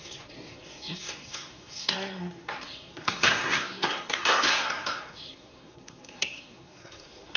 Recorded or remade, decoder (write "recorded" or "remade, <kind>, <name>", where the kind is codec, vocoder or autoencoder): remade, codec, SNAC